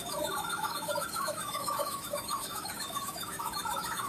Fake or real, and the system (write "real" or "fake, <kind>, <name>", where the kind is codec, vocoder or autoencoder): fake, autoencoder, DAC-VAE